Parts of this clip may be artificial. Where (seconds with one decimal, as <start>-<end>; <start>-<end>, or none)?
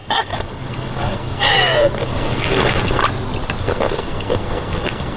0.0-3.0; 3.6-5.2